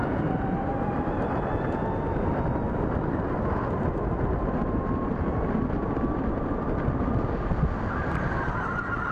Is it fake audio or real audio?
real